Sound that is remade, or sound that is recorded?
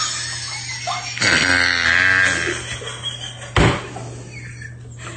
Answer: recorded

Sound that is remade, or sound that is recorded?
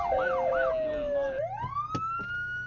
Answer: recorded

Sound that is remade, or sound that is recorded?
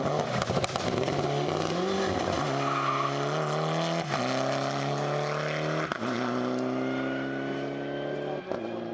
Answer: recorded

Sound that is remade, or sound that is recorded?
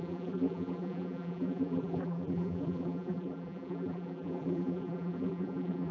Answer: remade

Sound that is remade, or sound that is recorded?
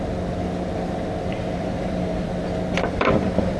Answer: remade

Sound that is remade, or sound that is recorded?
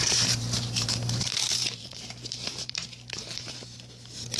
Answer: remade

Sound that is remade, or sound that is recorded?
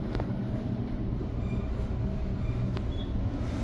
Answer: remade